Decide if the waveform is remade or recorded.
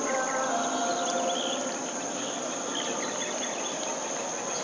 recorded